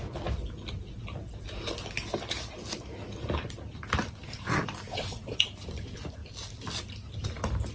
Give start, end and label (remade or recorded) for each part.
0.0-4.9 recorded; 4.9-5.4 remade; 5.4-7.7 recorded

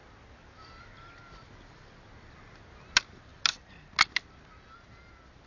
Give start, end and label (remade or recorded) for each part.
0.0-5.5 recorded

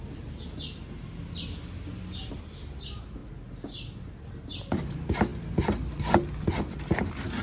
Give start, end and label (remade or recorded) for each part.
0.0-7.4 recorded

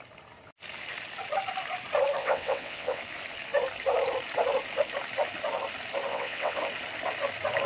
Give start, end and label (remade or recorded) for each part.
0.0-2.2 recorded; 2.2-3.0 remade; 3.0-6.1 recorded; 6.1-6.6 remade; 6.6-7.7 recorded

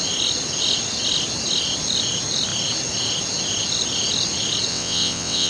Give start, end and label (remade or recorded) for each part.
0.0-4.7 recorded; 4.7-5.5 remade